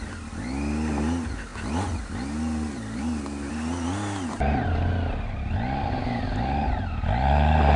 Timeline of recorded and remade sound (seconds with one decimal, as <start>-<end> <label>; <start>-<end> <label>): 0.0-7.8 recorded